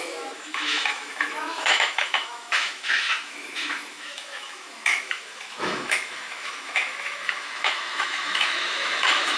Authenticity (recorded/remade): remade